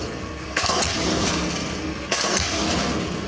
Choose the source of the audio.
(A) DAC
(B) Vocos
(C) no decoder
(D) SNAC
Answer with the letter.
D